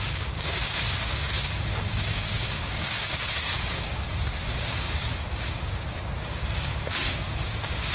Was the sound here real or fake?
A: fake